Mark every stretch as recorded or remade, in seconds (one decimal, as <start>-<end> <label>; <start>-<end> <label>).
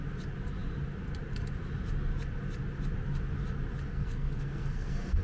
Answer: 0.0-3.9 recorded; 3.9-5.2 remade